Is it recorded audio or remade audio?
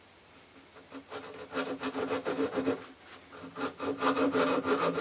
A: recorded